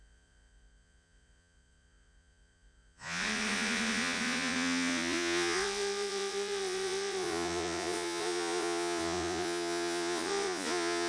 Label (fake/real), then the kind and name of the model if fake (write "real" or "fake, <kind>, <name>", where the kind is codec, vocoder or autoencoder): fake, vocoder, Vocos